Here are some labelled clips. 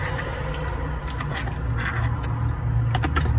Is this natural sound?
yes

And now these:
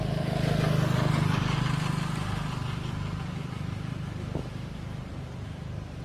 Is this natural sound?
yes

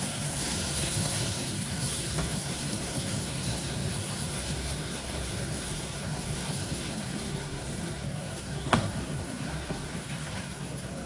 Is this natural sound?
no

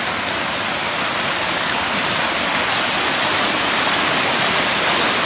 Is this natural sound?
yes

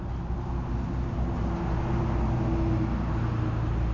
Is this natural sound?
yes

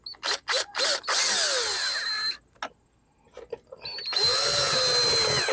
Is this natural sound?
yes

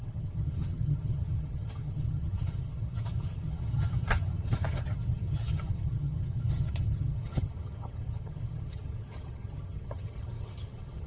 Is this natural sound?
no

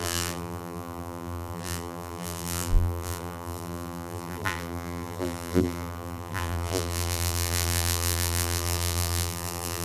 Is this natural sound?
no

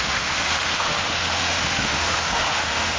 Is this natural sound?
no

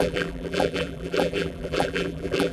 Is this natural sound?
no